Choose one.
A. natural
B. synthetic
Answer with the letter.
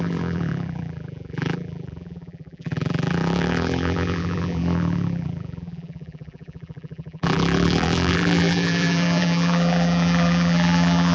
B